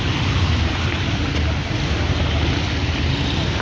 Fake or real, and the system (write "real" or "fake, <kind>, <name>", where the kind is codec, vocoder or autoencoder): real